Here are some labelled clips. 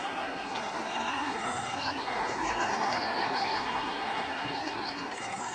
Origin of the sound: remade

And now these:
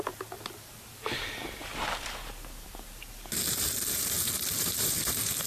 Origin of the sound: remade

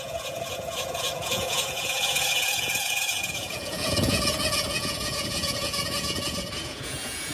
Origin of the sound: remade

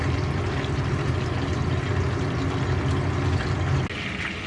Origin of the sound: recorded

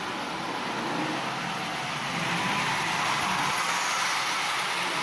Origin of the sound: recorded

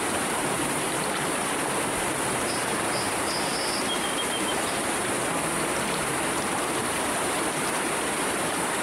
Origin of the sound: remade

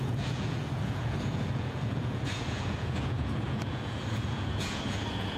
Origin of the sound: remade